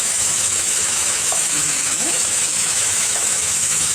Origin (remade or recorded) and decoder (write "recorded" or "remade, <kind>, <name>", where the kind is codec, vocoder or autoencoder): remade, autoencoder, DAC-VAE